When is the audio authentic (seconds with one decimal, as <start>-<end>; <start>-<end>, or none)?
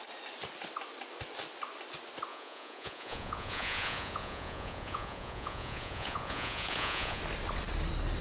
0.0-2.3; 7.2-8.2